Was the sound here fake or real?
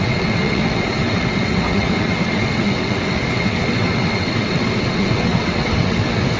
fake